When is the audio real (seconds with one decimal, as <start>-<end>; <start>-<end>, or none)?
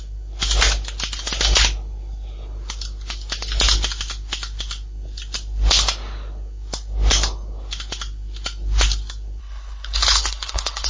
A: 0.0-9.4